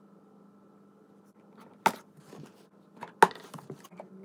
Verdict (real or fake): real